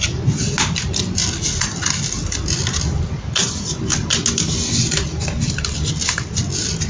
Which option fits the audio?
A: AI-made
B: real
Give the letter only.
B